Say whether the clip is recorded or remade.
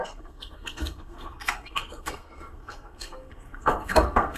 remade